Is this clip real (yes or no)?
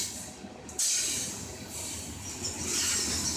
yes